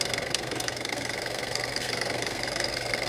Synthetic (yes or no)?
yes